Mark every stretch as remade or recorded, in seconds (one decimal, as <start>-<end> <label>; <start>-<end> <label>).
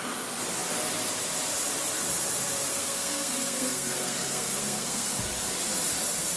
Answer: 0.0-2.7 recorded; 2.7-5.2 remade; 5.2-6.4 recorded